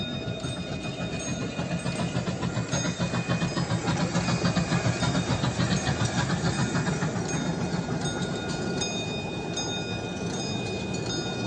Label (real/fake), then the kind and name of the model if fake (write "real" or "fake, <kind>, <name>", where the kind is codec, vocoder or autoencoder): real